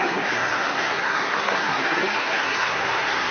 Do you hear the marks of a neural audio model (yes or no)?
yes